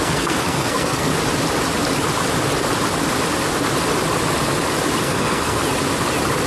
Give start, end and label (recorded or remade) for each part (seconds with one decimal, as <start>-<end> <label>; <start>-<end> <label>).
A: 0.0-1.1 remade; 1.1-5.0 recorded; 5.0-5.6 remade; 5.6-6.5 recorded

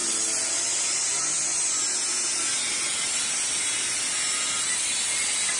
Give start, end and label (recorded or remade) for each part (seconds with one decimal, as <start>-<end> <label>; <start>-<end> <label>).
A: 0.0-0.7 remade; 0.7-5.6 recorded

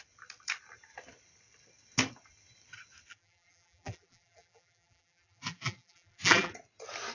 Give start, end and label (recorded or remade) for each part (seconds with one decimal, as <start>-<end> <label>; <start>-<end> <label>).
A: 0.0-3.1 recorded; 3.1-6.5 remade; 6.5-7.1 recorded

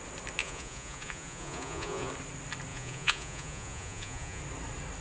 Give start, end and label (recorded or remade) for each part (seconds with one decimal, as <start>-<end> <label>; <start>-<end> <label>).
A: 0.0-0.4 recorded; 0.4-2.1 remade; 2.1-2.7 recorded; 2.7-4.4 remade; 4.4-5.0 recorded